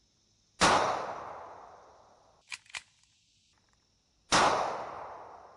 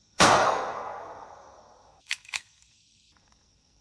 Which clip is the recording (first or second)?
first